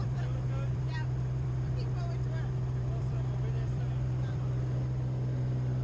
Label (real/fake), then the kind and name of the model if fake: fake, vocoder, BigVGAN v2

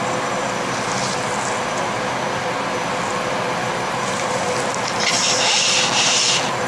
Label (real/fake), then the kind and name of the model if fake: real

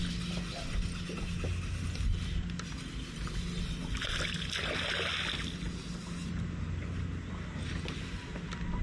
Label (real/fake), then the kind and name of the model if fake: real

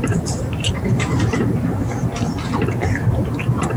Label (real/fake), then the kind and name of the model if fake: fake, vocoder, BigVGAN v2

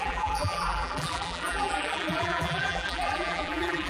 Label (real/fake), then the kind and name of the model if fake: fake, vocoder, BigVGAN v2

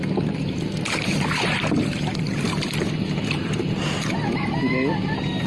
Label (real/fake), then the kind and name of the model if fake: fake, vocoder, BigVGAN v2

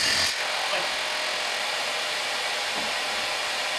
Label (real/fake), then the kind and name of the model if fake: real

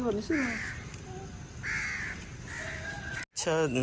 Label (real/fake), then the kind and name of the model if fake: real